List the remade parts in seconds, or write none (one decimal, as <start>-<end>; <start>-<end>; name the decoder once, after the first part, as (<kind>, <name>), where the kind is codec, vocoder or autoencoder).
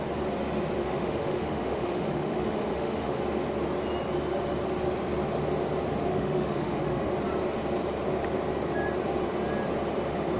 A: 0.8-3.2 (autoencoder, DAC-VAE); 6.1-7.1